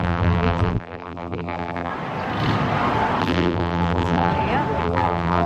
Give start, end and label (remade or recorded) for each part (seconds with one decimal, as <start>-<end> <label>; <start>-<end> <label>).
0.0-1.9 remade; 1.9-3.2 recorded; 3.2-4.3 remade; 4.3-4.8 recorded; 4.8-5.5 remade